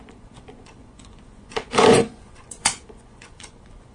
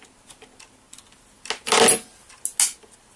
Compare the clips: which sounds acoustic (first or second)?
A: second